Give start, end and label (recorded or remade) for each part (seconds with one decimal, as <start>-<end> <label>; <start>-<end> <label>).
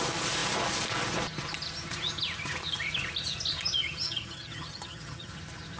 0.0-3.8 recorded; 3.8-5.3 remade; 5.3-5.8 recorded